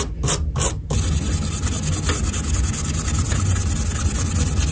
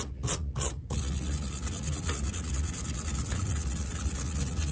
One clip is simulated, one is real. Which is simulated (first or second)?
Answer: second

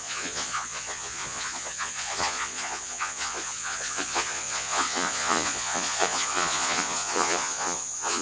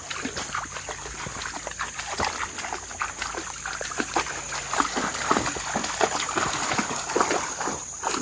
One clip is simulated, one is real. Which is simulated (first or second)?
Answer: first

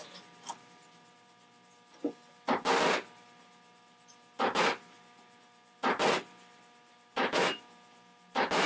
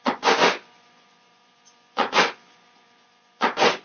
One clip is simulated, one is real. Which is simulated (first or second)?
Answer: second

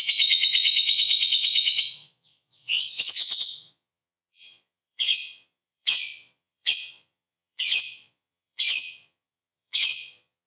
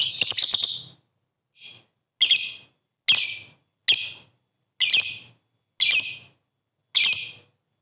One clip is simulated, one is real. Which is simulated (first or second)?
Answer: first